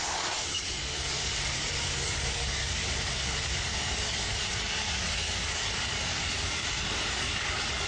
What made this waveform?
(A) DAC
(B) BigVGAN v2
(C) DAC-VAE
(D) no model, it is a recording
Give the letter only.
A